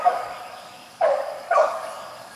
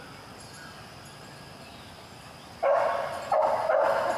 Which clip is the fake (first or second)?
first